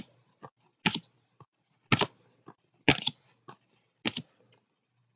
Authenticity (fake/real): real